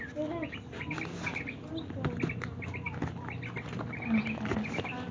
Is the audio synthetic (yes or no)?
no